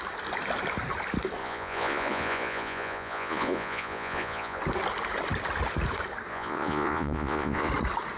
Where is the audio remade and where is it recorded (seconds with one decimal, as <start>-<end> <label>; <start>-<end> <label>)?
0.0-1.4 recorded; 1.4-4.6 remade; 4.6-6.3 recorded; 6.3-7.7 remade; 7.7-8.2 recorded